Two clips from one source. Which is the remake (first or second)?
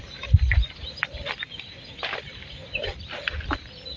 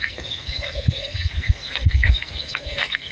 second